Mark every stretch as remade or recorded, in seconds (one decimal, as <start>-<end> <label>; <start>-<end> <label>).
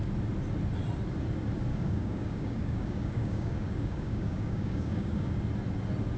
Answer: 0.0-1.7 recorded; 1.7-5.4 remade; 5.4-6.2 recorded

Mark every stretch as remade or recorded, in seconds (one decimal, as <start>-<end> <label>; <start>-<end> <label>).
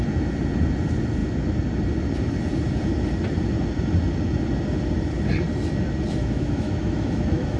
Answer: 0.0-6.2 recorded; 6.2-7.6 remade